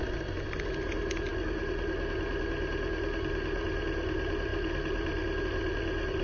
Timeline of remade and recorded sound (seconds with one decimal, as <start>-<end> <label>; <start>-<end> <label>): 0.0-6.2 recorded